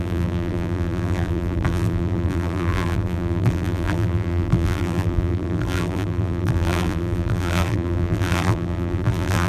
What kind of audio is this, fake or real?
fake